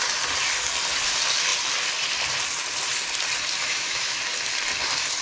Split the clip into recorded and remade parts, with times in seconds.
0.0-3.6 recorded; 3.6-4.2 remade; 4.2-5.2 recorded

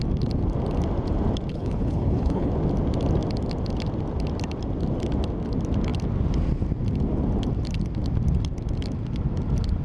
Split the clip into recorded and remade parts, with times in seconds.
0.0-1.5 recorded; 1.5-2.5 remade; 2.5-9.8 recorded

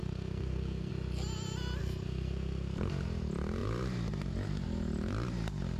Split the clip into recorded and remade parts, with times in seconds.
0.0-0.9 remade; 0.9-1.8 recorded; 1.8-2.9 remade; 2.9-5.8 recorded

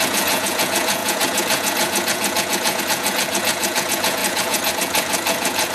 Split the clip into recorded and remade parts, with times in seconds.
0.0-5.7 remade

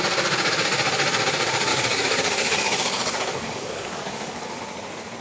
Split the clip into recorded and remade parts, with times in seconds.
0.0-1.7 recorded; 1.7-4.6 remade; 4.6-5.2 recorded

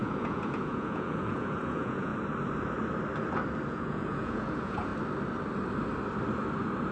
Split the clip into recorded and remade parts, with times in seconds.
0.0-2.1 remade; 2.1-3.7 recorded; 3.7-4.9 remade; 4.9-6.9 recorded